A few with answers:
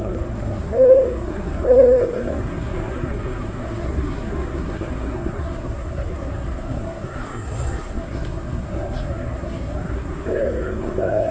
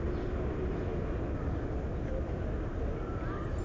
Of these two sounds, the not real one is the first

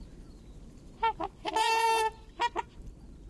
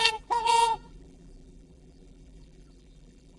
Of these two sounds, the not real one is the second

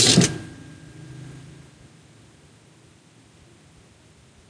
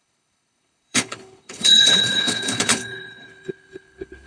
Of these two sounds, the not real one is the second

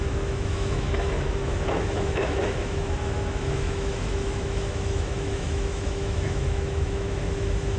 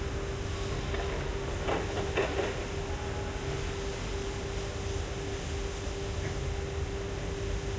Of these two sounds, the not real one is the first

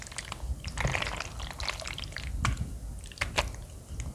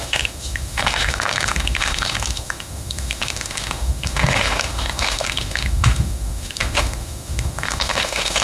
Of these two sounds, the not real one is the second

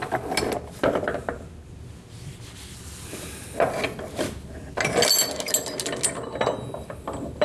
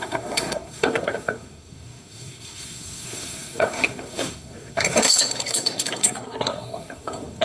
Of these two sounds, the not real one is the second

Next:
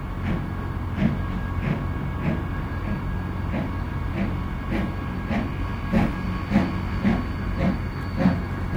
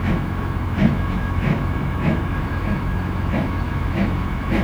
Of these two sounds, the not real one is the second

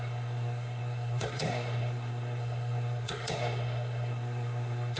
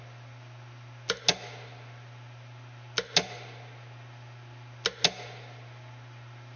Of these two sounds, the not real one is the first